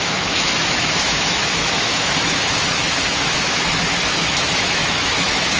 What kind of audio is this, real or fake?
fake